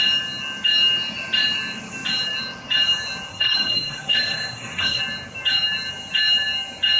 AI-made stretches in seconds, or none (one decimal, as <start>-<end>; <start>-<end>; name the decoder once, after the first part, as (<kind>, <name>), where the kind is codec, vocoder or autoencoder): 3.3-5.0 (codec, SNAC)